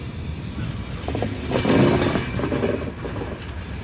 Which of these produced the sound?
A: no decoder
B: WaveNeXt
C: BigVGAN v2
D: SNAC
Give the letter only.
A